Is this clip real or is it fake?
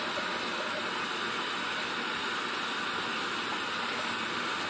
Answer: real